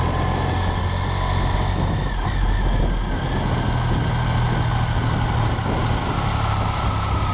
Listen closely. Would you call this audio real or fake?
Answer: real